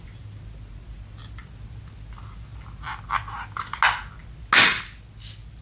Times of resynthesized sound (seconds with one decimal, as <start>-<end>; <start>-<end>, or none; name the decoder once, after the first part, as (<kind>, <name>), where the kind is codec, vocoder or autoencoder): none